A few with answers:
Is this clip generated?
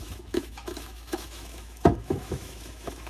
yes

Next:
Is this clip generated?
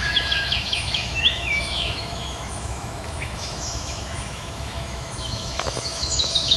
yes